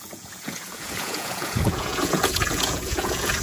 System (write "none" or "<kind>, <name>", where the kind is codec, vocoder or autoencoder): vocoder, Vocos